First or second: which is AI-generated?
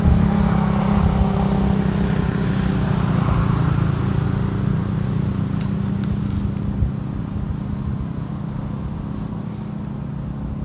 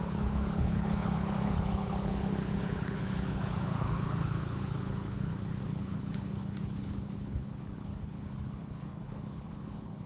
second